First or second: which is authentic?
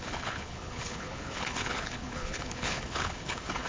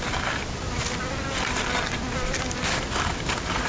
second